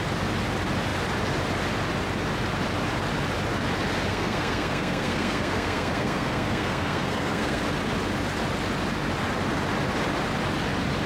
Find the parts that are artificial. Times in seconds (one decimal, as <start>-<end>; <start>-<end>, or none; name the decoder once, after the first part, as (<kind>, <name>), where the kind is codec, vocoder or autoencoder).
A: 4.1-7.6 (codec, SNAC)